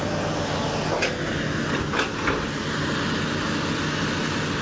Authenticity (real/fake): real